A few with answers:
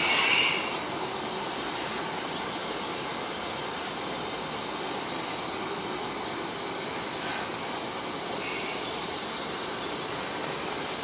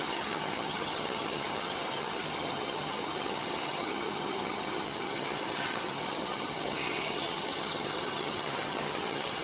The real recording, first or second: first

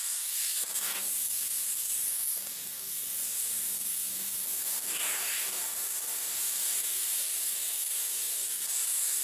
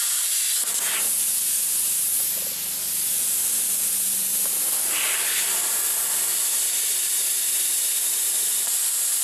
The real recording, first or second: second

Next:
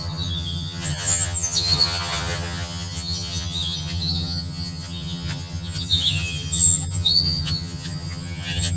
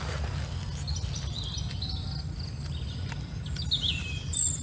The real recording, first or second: second